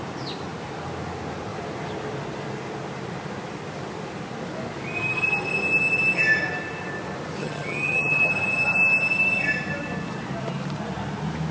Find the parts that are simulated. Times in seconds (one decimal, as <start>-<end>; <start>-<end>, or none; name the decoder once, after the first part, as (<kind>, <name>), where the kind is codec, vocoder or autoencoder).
7.4-8.3 (vocoder, HiFi-GAN)